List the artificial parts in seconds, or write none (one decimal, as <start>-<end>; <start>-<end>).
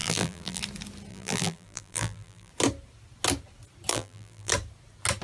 0.0-0.6; 1.1-2.5; 3.9-4.5